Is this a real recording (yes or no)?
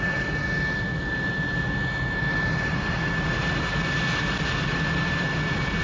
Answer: yes